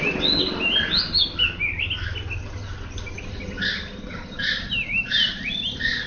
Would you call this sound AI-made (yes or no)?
no